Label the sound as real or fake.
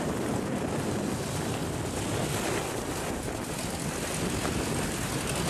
real